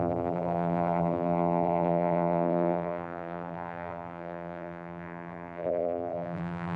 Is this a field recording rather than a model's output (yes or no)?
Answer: no